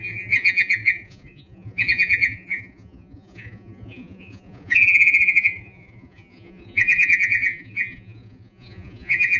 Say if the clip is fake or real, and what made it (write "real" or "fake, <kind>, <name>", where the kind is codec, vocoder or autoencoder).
fake, vocoder, Vocos